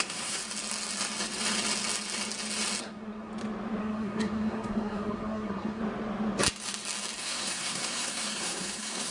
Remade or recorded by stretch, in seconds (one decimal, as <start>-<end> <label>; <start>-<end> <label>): 0.0-0.4 remade; 0.4-2.8 recorded; 2.8-3.3 remade; 3.3-3.8 recorded; 3.8-5.8 remade; 5.8-7.2 recorded; 7.2-9.1 remade